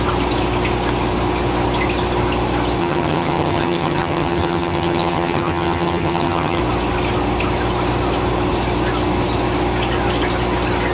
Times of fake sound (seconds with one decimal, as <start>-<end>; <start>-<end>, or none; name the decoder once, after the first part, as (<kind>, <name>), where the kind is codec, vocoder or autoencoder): 2.8-6.6 (vocoder, HiFi-GAN)